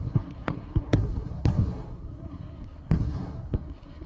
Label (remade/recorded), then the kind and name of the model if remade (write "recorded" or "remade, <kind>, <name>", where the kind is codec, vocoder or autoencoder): remade, codec, SNAC